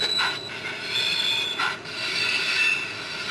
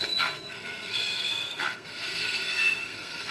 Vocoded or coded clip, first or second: second